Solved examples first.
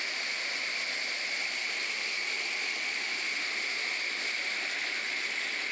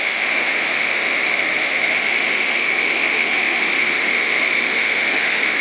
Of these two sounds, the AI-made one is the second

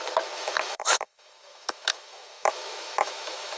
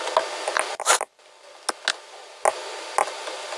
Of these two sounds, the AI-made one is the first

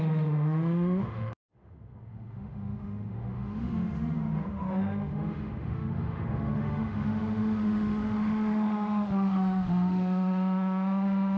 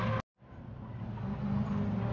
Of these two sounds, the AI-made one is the first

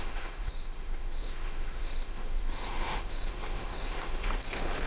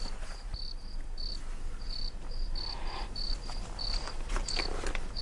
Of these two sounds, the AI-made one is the first